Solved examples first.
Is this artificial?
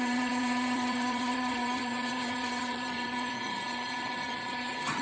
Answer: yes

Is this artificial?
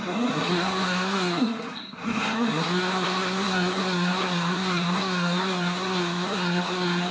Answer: yes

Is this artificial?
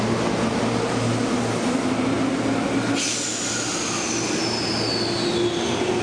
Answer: no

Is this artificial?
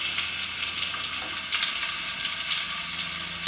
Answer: no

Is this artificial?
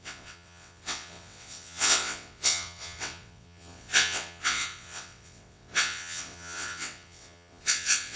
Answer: yes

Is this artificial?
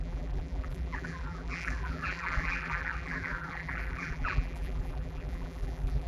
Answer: yes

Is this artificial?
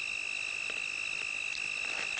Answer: no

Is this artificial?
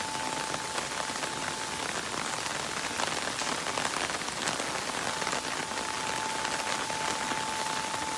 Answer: no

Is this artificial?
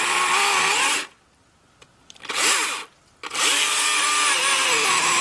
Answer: no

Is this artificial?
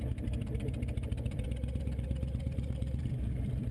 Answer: yes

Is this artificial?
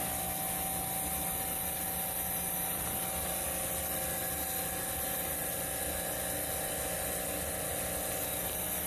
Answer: no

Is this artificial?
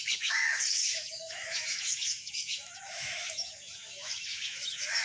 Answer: yes